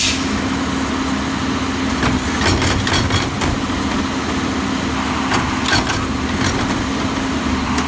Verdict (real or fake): real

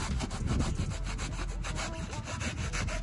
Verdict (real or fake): real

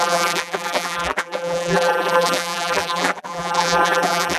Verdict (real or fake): fake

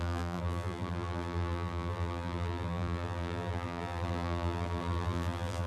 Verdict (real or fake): fake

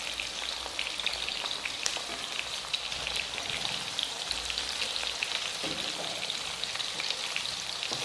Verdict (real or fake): fake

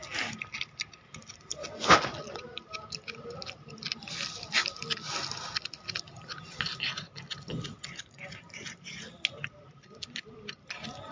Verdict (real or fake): real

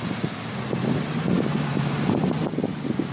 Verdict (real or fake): real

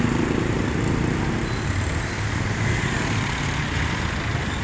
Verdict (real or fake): real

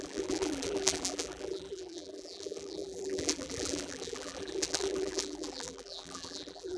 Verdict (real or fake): fake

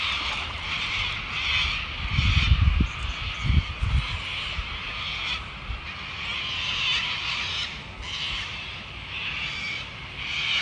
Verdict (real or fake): real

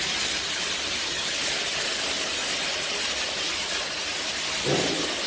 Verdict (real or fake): real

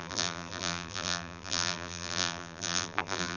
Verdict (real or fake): fake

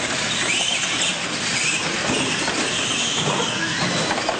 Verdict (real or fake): fake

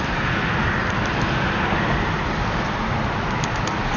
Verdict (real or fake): real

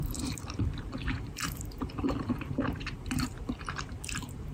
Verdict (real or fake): fake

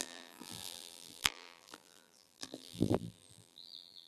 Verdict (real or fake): fake